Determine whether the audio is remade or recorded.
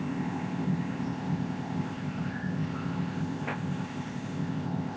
remade